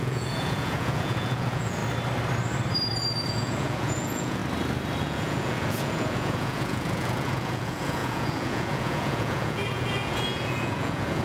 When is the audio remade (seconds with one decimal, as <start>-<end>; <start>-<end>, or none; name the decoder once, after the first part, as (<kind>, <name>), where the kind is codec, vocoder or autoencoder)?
0.0-1.8 (vocoder, Vocos); 3.3-4.4; 5.0-11.2